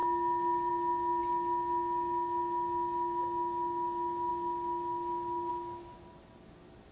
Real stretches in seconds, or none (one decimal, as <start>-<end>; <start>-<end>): 0.0-6.9